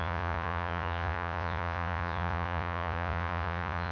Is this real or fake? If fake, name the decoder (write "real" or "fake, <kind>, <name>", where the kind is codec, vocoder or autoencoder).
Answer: fake, vocoder, Vocos